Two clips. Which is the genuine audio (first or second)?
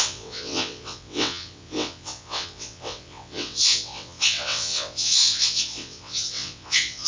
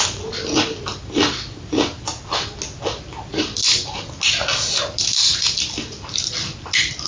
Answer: second